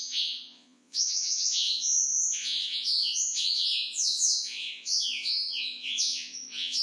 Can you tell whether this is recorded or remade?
remade